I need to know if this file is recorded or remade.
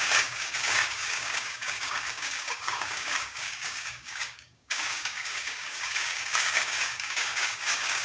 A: remade